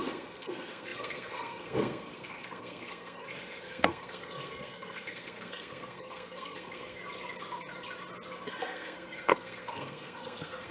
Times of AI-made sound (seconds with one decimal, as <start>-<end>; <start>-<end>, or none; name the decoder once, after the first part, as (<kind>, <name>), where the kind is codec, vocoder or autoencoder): 0.0-7.0 (codec, SNAC); 8.5-10.7